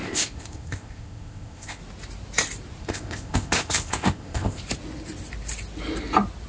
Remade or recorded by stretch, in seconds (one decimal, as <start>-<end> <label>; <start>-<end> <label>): 0.0-1.8 remade; 1.8-2.8 recorded; 2.8-4.6 remade; 4.6-6.5 recorded